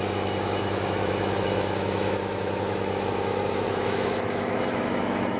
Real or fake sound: fake